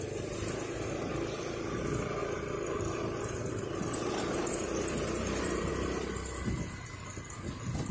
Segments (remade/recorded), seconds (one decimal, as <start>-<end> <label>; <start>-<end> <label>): 0.0-1.1 recorded; 1.1-1.8 remade; 1.8-2.2 recorded; 2.2-5.7 remade; 5.7-7.9 recorded